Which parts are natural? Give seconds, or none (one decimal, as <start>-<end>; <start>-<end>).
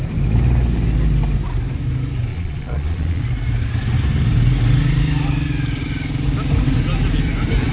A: 0.0-2.3; 3.2-7.7